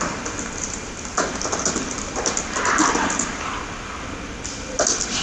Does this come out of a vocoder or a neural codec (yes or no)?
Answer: yes